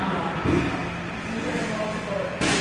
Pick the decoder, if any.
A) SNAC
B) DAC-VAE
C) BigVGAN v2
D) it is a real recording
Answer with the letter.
D